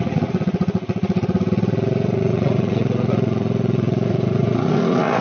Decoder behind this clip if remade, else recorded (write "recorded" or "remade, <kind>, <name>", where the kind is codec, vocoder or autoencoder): remade, vocoder, Vocos